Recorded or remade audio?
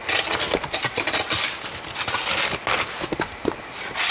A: recorded